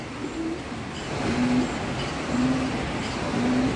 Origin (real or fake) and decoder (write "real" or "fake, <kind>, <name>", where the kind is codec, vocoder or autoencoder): real